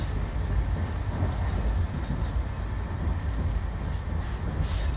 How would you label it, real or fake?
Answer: real